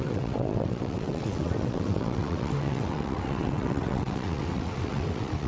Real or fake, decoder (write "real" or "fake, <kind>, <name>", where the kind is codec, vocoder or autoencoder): fake, vocoder, WaveNeXt